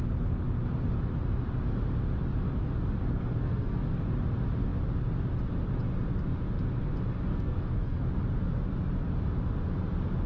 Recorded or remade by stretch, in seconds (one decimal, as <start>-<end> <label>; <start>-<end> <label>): 0.0-3.1 recorded; 3.1-3.8 remade; 3.8-7.3 recorded; 7.3-8.0 remade; 8.0-10.3 recorded